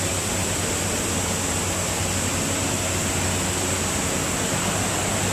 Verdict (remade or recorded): recorded